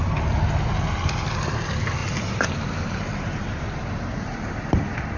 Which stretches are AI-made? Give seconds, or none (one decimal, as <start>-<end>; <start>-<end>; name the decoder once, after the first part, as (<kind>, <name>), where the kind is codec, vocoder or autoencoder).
2.0-4.8 (vocoder, BigVGAN v2)

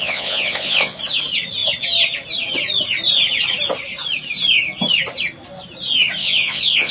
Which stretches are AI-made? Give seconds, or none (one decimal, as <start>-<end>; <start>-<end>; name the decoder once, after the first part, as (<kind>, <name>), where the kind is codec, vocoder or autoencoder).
0.0-1.0 (vocoder, Vocos); 6.2-6.9